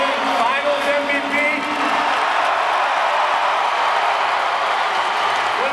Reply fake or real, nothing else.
real